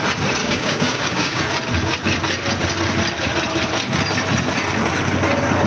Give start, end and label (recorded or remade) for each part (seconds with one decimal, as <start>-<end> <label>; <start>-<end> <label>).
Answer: 0.0-0.4 recorded; 0.4-1.4 remade; 1.4-5.7 recorded